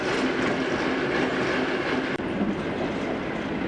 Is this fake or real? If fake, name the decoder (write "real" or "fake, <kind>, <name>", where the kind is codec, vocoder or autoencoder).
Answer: real